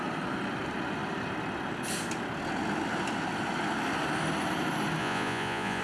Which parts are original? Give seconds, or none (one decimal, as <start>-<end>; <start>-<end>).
0.0-5.0

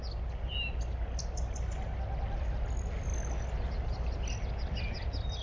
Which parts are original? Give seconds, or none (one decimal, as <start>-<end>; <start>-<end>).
0.0-5.4